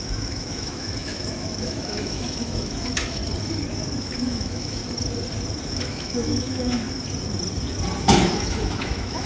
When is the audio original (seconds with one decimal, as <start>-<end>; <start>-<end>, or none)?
3.2-4.0; 4.8-5.6; 6.8-8.0